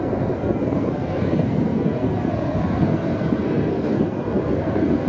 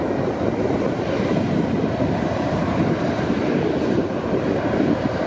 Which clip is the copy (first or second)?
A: first